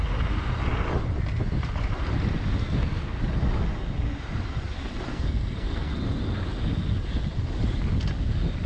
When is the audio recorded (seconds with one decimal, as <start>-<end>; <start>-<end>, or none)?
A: 0.0-2.6; 3.2-5.1; 5.9-8.7